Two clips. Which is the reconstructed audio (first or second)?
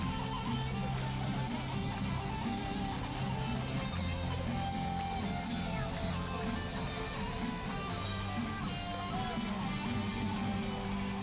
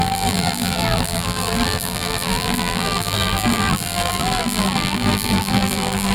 second